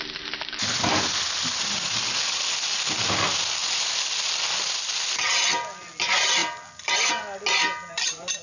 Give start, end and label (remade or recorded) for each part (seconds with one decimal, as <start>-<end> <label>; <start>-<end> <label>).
0.0-8.4 recorded